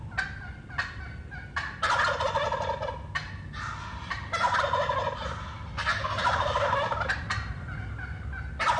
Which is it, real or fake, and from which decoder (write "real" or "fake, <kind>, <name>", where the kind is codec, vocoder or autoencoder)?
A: real